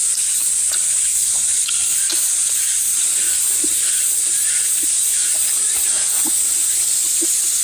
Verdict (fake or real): real